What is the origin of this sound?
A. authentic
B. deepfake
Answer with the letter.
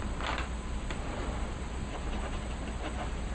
B